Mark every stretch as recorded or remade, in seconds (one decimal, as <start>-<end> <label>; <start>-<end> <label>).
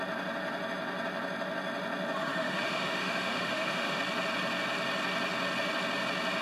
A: 0.0-2.2 recorded; 2.2-4.0 remade; 4.0-6.4 recorded